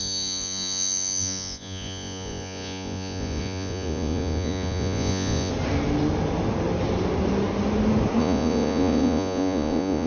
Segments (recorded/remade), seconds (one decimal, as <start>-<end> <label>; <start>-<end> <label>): 0.0-5.5 remade; 5.5-8.2 recorded; 8.2-10.1 remade